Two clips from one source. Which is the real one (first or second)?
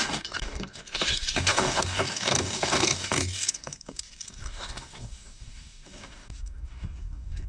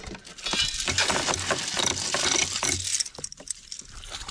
second